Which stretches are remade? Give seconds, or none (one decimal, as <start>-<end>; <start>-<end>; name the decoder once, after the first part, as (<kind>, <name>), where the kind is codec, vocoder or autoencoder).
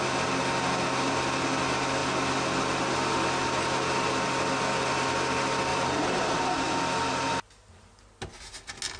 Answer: 5.7-6.4 (vocoder, BigVGAN v2)